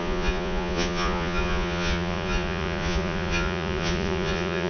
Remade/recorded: remade